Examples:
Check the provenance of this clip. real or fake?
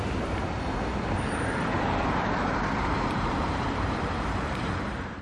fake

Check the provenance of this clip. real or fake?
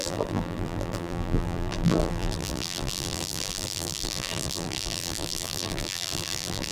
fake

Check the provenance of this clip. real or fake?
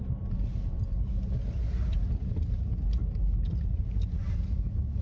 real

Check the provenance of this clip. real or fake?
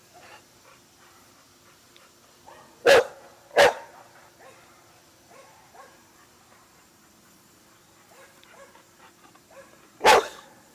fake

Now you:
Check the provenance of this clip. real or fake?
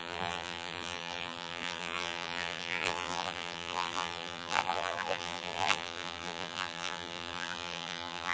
fake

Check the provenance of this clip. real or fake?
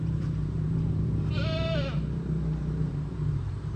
fake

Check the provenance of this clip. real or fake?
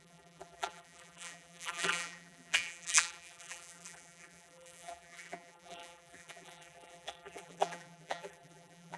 fake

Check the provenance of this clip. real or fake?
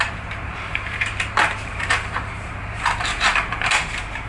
fake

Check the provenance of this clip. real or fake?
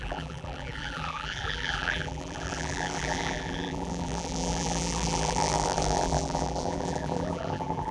fake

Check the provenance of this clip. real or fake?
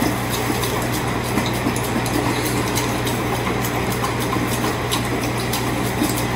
real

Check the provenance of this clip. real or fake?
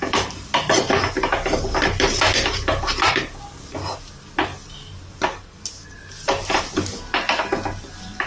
real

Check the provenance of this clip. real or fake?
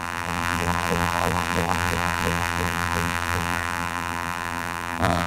fake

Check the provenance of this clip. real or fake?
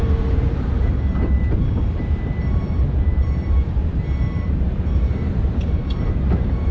fake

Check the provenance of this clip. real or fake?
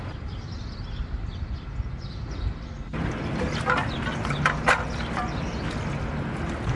fake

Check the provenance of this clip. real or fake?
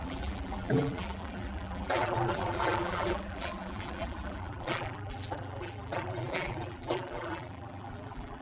fake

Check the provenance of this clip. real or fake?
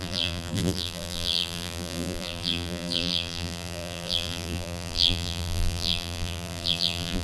fake